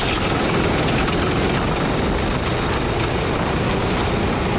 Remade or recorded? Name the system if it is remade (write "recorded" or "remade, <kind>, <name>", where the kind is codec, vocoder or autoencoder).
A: recorded